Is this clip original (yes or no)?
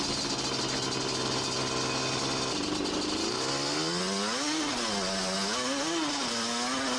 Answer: yes